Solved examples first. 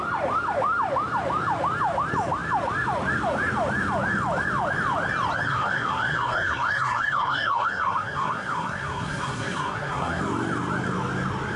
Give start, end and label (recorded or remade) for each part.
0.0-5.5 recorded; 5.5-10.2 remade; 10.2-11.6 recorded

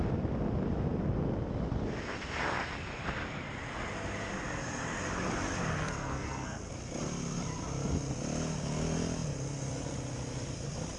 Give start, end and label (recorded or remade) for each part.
0.0-5.7 recorded; 5.7-6.7 remade; 6.7-11.0 recorded

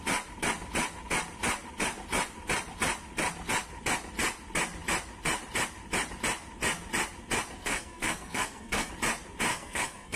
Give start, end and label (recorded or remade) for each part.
0.0-7.6 recorded; 7.6-8.9 remade; 8.9-9.5 recorded; 9.5-10.2 remade

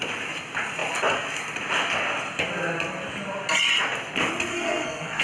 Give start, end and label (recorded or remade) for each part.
0.0-4.5 recorded; 4.5-5.2 remade

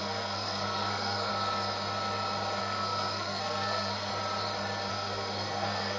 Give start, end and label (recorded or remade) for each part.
0.0-1.3 remade; 1.3-2.6 recorded; 2.6-4.1 remade; 4.1-4.9 recorded; 4.9-6.0 remade

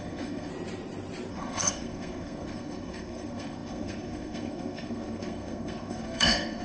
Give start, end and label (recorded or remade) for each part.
0.0-0.5 remade; 0.5-1.3 recorded; 1.3-6.6 remade

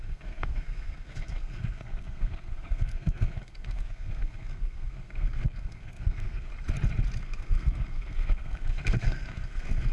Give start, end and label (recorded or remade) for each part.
0.0-6.5 remade; 6.5-7.2 recorded; 7.2-9.9 remade

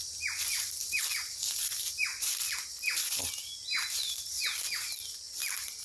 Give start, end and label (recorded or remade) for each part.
0.0-5.8 recorded